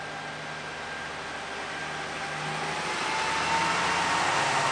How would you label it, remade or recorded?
recorded